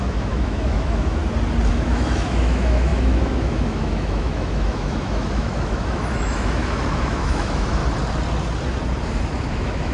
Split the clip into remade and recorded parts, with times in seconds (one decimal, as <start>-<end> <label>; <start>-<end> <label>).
0.0-1.2 remade; 1.2-1.7 recorded; 1.7-7.8 remade; 7.8-9.5 recorded; 9.5-9.9 remade